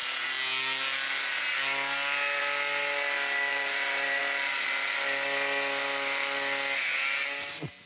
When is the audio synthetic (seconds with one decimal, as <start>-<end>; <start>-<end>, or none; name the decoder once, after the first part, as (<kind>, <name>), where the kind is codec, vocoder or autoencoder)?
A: 3.5-4.2 (vocoder, BigVGAN v2)

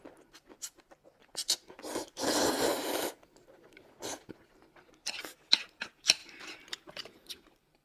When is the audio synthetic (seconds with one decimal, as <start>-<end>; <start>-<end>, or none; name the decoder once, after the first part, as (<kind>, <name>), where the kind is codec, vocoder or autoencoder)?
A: 0.0-1.2 (vocoder, BigVGAN v2); 5.7-7.8

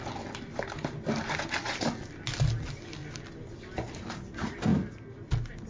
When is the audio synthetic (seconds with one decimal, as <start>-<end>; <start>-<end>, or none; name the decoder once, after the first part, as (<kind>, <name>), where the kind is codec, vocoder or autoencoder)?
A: none